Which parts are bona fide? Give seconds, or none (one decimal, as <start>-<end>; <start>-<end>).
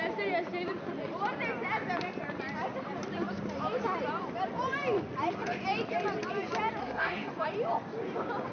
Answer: 0.0-6.8; 7.3-8.5